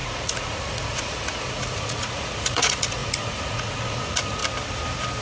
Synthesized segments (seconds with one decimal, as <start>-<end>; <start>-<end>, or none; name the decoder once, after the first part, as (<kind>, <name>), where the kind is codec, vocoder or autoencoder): 0.0-4.4 (vocoder, Vocos)